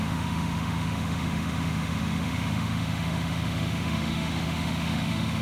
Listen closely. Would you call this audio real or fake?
fake